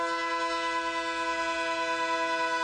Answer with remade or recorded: recorded